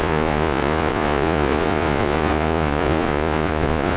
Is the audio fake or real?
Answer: fake